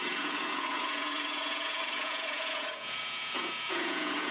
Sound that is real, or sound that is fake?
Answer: fake